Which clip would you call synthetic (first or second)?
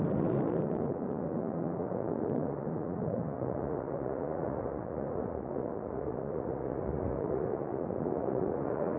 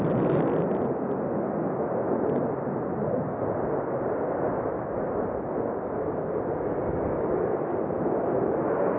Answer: first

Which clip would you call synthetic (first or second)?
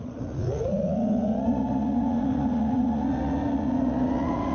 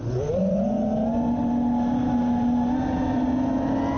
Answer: first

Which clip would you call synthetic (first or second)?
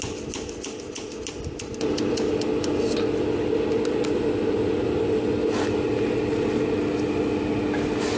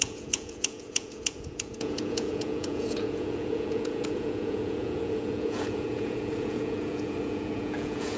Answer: second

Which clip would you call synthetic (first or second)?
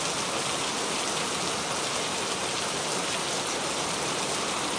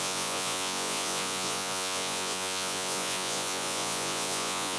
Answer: second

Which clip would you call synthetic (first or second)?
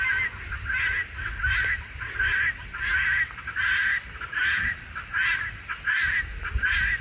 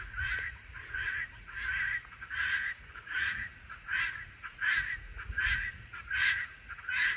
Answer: second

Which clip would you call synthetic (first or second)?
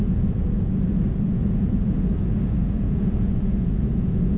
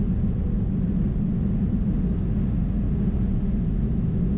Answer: first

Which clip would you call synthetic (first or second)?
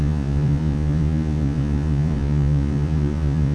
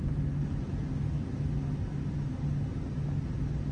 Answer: first